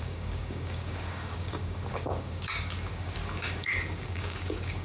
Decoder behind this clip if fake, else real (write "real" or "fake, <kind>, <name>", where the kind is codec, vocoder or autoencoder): fake, codec, DAC